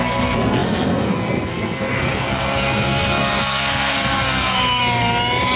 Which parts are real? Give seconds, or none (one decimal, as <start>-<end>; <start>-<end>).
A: 4.8-5.6